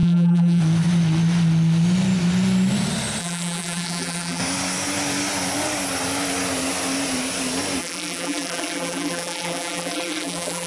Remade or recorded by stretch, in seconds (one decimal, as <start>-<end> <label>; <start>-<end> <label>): 0.0-0.6 remade; 0.6-3.2 recorded; 3.2-4.4 remade; 4.4-7.8 recorded; 7.8-10.7 remade